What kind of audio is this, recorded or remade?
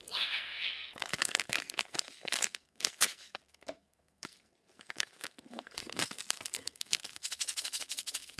remade